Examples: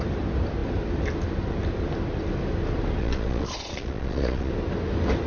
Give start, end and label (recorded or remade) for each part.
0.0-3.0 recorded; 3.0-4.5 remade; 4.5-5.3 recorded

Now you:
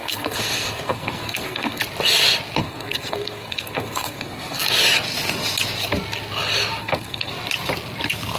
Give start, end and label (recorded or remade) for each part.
0.0-1.8 remade; 1.8-2.6 recorded; 2.6-4.6 remade; 4.6-6.8 recorded; 6.8-7.3 remade; 7.3-8.4 recorded

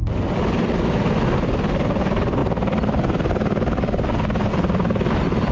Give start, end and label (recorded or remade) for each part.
0.0-5.5 recorded

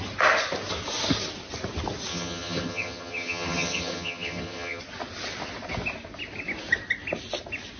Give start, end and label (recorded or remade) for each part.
0.0-2.1 recorded; 2.1-4.8 remade; 4.8-7.8 recorded